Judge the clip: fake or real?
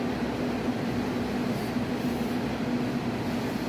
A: real